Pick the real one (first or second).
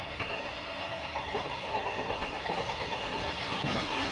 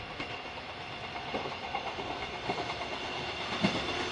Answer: second